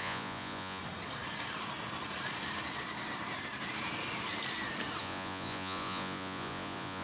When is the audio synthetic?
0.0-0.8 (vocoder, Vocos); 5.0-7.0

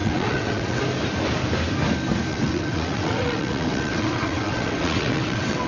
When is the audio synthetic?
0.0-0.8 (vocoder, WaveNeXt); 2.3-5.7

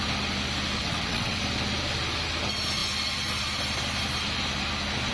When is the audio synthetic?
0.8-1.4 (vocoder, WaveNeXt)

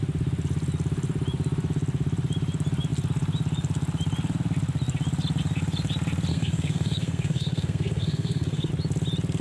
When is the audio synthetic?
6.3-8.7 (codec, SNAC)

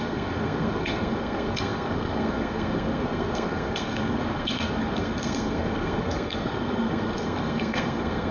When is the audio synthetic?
0.0-8.3 (codec, SNAC)

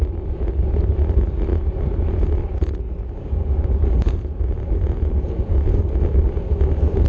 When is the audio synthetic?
1.5-5.8 (vocoder, Vocos)